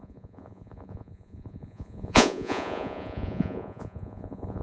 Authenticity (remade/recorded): remade